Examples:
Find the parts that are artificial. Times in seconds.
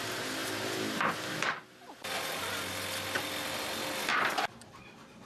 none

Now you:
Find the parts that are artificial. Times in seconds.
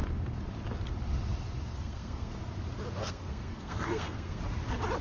1.7-2.3 (codec, SNAC); 3.0-4.4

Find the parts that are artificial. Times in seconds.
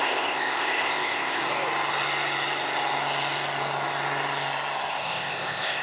0.0-1.4 (codec, ZipCodec); 4.9-5.8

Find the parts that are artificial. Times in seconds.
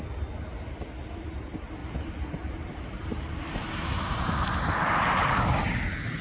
1.8-5.5 (vocoder, BigVGAN v2)